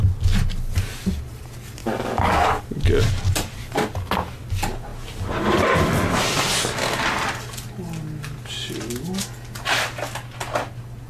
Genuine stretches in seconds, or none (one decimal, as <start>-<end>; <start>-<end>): 0.0-1.8; 2.6-11.1